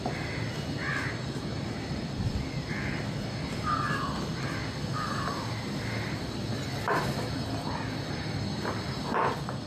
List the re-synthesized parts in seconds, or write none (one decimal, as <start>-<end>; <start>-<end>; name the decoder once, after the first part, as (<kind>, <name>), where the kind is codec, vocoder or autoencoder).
none